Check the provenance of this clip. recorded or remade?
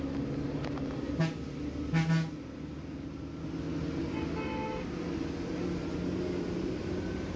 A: recorded